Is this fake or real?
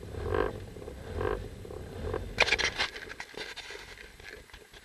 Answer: real